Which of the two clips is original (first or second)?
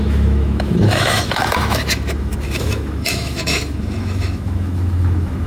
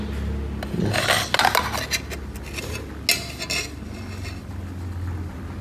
second